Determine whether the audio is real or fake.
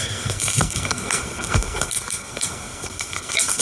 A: fake